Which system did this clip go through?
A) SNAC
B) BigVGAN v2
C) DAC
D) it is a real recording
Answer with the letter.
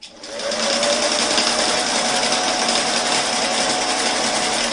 D